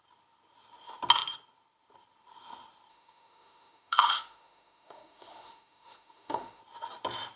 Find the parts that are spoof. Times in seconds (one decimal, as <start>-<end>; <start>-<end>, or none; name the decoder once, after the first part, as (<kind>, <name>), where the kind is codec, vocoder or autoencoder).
2.9-6.6 (autoencoder, DAC-VAE)